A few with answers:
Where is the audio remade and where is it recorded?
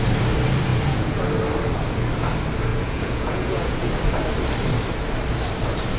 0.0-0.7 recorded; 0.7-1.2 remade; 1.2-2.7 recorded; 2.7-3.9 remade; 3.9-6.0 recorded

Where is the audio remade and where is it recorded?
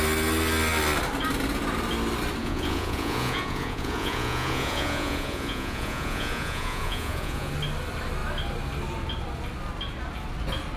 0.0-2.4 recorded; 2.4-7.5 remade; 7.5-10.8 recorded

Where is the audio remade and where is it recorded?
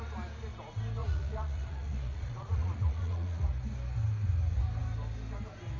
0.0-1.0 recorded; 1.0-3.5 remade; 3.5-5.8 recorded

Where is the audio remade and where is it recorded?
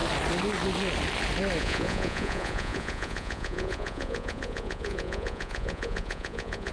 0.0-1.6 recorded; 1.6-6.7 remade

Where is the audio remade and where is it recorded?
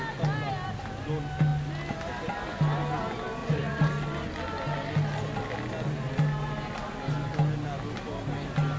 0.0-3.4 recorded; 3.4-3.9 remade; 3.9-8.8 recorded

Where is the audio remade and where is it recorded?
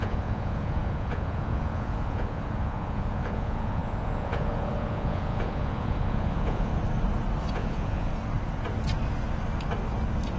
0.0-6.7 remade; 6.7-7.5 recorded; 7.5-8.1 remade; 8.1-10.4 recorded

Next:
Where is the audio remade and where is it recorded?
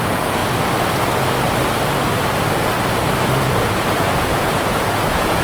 0.0-0.4 remade; 0.4-3.4 recorded; 3.4-5.4 remade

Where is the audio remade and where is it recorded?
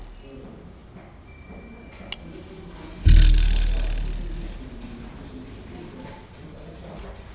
0.0-7.3 recorded